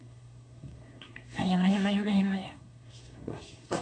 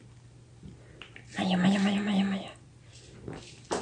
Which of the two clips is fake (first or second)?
first